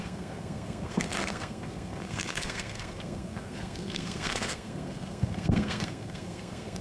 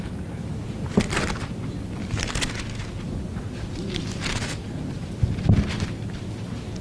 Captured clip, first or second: second